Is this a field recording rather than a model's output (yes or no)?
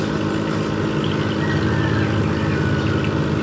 yes